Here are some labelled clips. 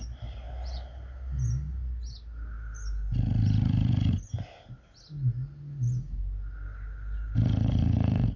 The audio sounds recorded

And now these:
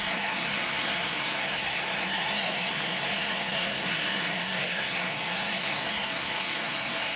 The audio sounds remade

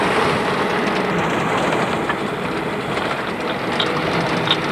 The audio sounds recorded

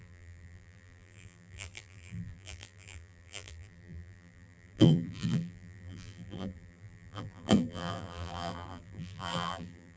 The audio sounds remade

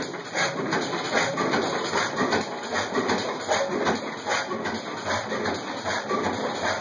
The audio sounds recorded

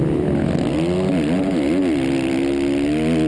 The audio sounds recorded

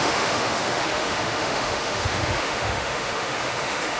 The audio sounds remade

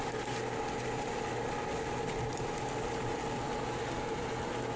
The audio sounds recorded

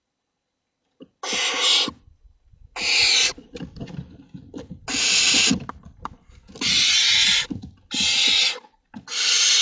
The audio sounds recorded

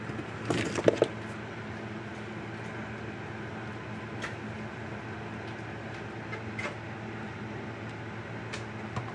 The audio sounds recorded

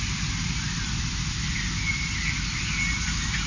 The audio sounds recorded